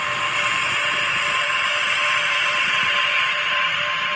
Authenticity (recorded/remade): remade